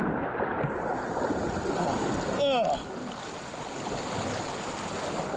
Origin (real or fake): real